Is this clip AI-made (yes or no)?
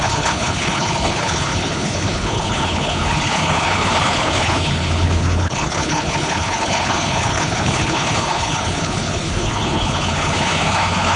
yes